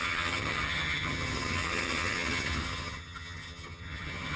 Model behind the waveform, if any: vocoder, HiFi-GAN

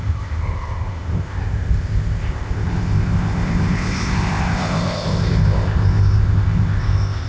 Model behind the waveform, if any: codec, ZipCodec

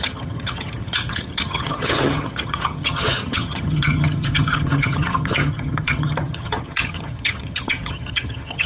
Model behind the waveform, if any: vocoder, HiFi-GAN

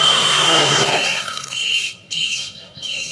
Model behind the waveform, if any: codec, SNAC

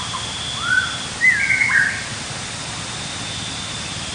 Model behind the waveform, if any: none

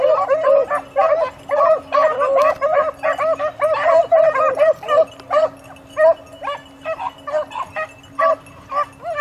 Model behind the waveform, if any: none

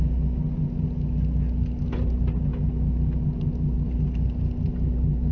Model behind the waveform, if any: none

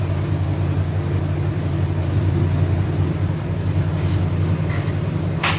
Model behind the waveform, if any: none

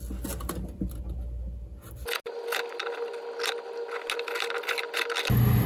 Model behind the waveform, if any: none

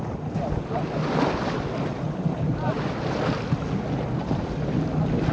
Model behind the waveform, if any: none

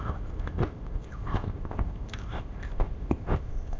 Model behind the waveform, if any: codec, ZipCodec